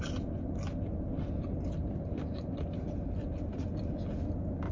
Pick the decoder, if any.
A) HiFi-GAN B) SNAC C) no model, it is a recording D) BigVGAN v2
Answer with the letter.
C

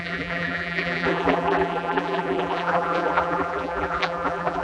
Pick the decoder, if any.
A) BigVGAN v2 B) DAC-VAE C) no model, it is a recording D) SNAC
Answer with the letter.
A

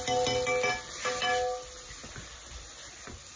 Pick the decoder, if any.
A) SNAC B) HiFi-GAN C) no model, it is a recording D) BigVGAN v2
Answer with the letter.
C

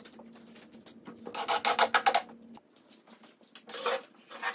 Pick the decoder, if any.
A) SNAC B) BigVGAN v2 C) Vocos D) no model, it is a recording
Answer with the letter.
D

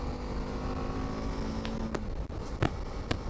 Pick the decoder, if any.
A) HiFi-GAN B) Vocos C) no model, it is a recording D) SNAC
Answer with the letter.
C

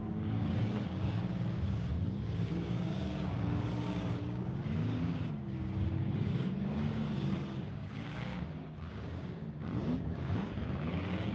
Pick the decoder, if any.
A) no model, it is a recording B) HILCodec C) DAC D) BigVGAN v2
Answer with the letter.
C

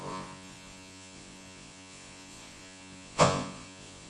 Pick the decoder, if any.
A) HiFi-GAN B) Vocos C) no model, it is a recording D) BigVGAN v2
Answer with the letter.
B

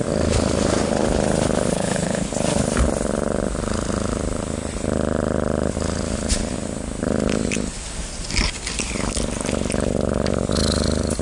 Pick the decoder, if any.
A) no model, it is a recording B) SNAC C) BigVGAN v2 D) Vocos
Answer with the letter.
A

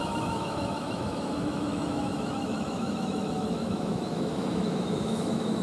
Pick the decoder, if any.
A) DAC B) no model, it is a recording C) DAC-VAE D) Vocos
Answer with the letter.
C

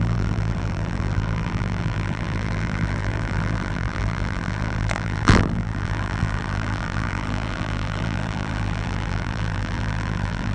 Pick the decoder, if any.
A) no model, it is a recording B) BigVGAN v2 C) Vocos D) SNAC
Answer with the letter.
B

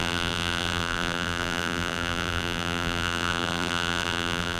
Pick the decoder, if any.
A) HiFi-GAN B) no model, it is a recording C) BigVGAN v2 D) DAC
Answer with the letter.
C